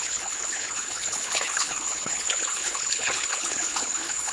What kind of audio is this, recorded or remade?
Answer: remade